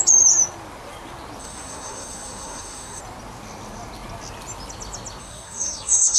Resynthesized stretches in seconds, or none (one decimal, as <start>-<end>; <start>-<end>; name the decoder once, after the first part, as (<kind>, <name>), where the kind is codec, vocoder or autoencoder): 1.4-3.0 (codec, SNAC); 5.2-6.2